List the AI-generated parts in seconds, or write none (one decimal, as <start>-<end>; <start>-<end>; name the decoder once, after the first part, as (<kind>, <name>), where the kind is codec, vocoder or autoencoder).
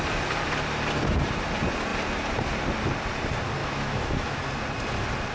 3.6-4.4 (autoencoder, DAC-VAE)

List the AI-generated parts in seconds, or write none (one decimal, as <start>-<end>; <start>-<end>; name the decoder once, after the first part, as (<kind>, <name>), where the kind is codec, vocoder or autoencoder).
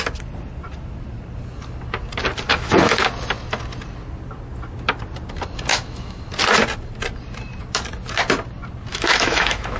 2.5-3.1 (autoencoder, DAC-VAE); 5.7-6.2; 8.9-9.8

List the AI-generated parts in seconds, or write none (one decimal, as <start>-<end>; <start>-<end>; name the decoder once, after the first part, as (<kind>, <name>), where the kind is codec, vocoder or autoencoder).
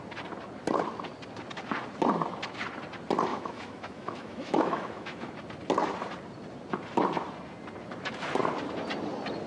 3.3-5.3 (autoencoder, DAC-VAE)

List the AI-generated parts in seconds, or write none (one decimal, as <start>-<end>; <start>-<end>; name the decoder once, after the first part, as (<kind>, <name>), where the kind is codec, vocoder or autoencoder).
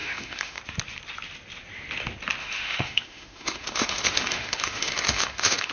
0.0-0.6 (autoencoder, DAC-VAE); 2.4-5.7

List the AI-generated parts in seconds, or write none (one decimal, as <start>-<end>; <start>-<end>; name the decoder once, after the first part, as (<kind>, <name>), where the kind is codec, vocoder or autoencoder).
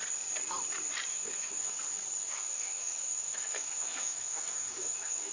1.1-1.7 (autoencoder, DAC-VAE); 2.2-5.3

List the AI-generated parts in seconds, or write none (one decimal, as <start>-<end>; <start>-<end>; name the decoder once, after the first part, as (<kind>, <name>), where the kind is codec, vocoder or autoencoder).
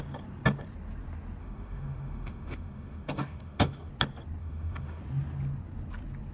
1.4-3.9 (autoencoder, DAC-VAE); 4.4-5.0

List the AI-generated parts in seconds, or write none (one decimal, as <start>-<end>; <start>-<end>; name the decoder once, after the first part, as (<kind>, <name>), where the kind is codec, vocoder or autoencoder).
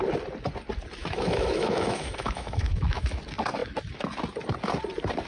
1.0-3.2 (autoencoder, DAC-VAE)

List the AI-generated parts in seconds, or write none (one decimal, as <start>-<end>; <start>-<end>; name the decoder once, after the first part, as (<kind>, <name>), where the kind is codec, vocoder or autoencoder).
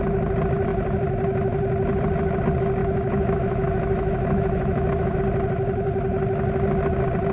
2.8-5.2 (autoencoder, DAC-VAE)